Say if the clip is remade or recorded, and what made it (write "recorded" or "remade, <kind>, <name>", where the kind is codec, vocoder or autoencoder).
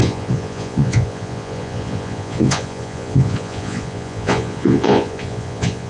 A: remade, vocoder, Vocos